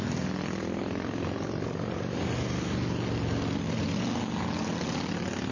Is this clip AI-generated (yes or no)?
no